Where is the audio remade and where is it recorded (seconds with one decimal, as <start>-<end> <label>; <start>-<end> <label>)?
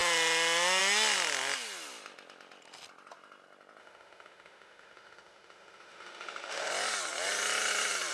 0.0-3.8 recorded; 3.8-6.7 remade; 6.7-8.1 recorded